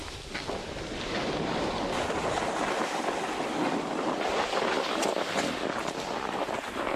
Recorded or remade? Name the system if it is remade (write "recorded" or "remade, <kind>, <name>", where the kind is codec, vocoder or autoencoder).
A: recorded